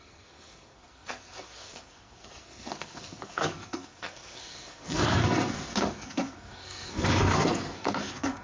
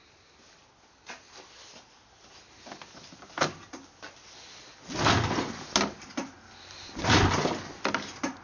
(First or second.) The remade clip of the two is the first